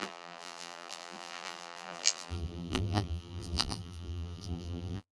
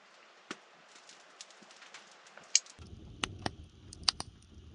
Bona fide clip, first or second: second